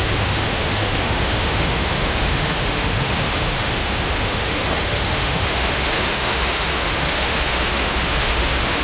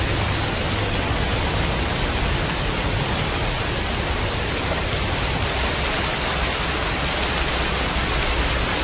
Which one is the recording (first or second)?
second